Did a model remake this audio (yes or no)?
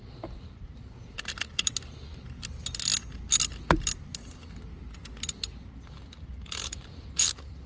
no